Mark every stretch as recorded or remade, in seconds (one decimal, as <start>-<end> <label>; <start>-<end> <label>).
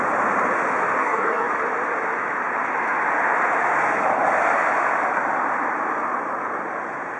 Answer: 0.0-1.0 recorded; 1.0-1.5 remade; 1.5-7.2 recorded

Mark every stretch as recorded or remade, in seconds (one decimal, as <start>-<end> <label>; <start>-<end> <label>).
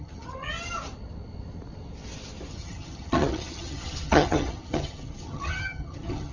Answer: 0.0-0.5 remade; 0.5-2.5 recorded; 2.5-6.3 remade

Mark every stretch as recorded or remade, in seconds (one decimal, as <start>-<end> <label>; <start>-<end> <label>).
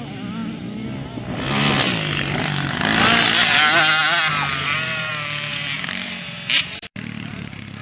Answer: 0.0-5.5 recorded; 5.5-7.8 remade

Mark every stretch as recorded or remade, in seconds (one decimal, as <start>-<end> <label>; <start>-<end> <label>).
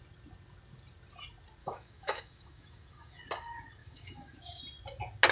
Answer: 0.0-1.6 recorded; 1.6-3.2 remade; 3.2-3.8 recorded; 3.8-4.6 remade; 4.6-5.3 recorded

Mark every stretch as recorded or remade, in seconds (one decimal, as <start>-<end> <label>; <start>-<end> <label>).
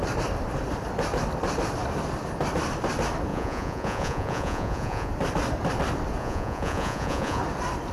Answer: 0.0-3.3 recorded; 3.3-5.1 remade; 5.1-6.2 recorded; 6.2-7.4 remade; 7.4-7.9 recorded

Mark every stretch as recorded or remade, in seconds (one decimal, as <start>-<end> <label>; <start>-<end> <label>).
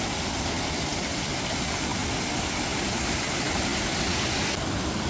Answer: 0.0-5.1 recorded